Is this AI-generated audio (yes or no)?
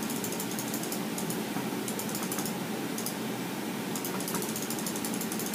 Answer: no